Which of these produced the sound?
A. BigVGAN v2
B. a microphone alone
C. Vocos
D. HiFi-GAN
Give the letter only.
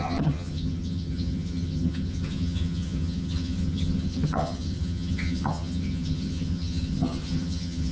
D